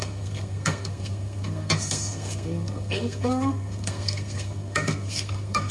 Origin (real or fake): fake